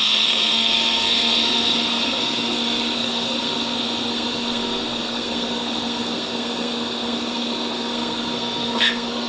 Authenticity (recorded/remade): remade